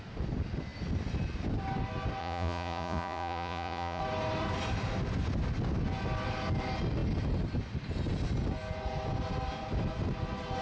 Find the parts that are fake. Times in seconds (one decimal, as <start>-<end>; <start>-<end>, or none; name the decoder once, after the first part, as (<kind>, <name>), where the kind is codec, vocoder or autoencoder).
2.2-4.0 (vocoder, Vocos)

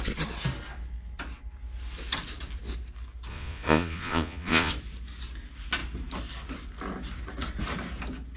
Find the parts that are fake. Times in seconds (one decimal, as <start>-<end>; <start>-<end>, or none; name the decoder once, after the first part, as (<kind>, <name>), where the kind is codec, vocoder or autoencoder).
3.3-4.7 (vocoder, Vocos)

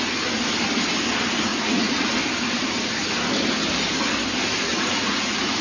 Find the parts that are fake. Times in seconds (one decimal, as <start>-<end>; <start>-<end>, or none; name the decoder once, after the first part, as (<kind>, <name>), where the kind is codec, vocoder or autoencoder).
1.5-2.1 (vocoder, Vocos); 4.7-5.6

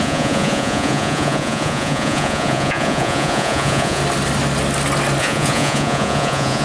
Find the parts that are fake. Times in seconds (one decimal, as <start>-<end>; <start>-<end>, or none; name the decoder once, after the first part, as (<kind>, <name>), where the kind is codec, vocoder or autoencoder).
0.0-4.0 (vocoder, Vocos); 5.2-6.6

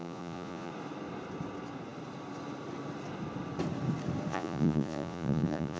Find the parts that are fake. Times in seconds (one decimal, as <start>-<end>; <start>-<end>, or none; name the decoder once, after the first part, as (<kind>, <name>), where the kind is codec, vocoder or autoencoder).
0.0-0.7 (vocoder, Vocos); 4.3-5.8

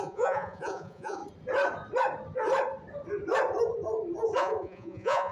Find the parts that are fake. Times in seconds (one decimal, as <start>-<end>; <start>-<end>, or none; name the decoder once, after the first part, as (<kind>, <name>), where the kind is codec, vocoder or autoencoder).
0.0-1.2 (vocoder, Vocos); 4.4-5.3

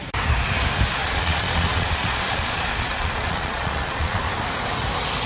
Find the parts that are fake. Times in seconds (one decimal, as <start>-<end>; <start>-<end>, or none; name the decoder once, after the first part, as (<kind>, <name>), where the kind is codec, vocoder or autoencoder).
1.0-4.2 (vocoder, Vocos)